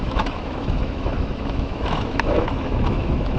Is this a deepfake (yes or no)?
yes